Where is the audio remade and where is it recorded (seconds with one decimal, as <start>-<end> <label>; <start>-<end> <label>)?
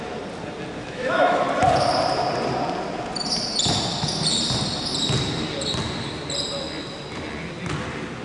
0.0-0.8 recorded; 0.8-1.5 remade; 1.5-8.2 recorded